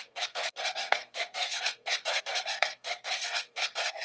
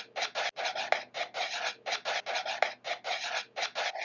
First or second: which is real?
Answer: second